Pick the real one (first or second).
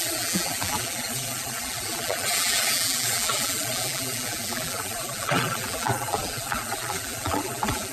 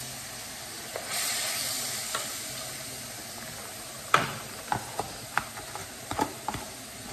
second